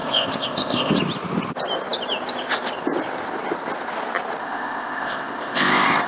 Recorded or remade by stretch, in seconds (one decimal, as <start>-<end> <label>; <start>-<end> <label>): 0.0-1.0 remade; 1.0-4.4 recorded; 4.4-6.1 remade